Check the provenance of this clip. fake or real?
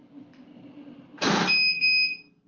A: real